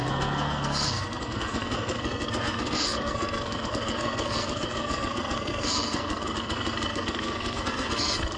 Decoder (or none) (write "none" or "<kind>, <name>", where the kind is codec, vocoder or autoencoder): codec, SNAC